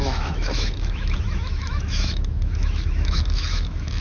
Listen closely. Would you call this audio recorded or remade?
remade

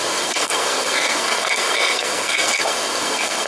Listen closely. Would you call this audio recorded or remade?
remade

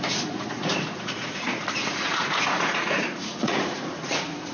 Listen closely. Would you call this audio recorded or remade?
remade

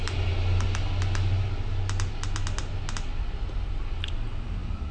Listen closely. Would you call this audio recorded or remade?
recorded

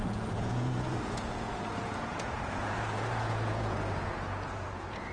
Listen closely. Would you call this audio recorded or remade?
remade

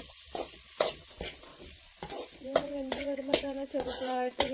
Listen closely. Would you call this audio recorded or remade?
remade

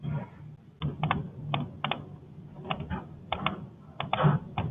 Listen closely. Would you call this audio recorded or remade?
recorded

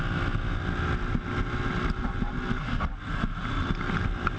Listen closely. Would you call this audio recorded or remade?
recorded